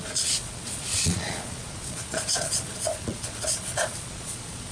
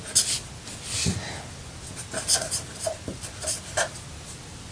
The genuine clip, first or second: second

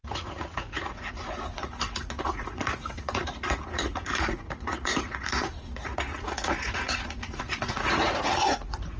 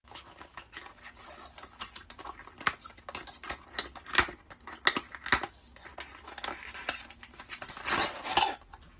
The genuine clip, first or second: second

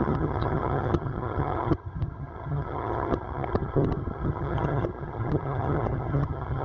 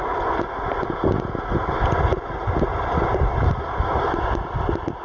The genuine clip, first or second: second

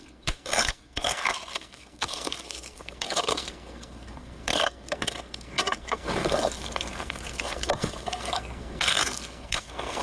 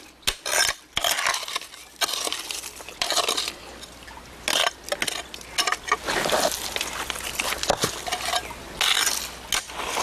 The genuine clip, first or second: second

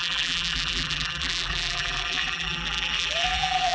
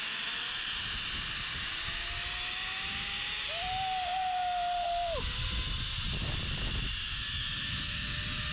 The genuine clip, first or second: second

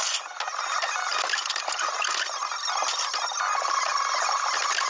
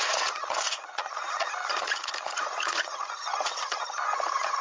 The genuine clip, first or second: first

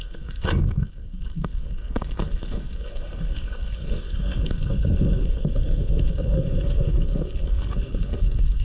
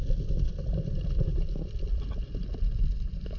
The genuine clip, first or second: second